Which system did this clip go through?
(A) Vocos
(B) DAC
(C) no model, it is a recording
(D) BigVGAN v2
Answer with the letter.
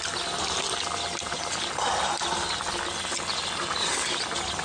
C